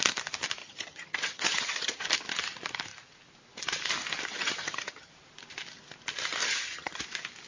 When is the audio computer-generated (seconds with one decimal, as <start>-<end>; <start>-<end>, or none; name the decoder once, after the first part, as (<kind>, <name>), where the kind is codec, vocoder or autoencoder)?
0.6-2.0 (vocoder, HiFi-GAN); 4.3-5.1; 6.4-7.0